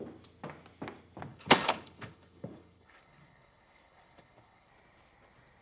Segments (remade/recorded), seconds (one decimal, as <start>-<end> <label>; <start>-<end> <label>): 0.0-1.3 recorded; 1.3-4.7 remade; 4.7-5.6 recorded